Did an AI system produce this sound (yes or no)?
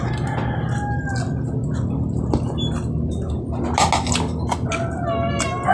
no